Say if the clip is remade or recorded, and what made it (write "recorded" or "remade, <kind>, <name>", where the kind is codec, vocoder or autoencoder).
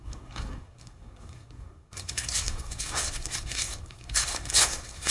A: remade, codec, SNAC